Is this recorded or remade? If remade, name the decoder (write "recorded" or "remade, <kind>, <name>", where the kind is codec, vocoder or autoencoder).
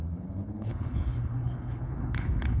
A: remade, codec, HILCodec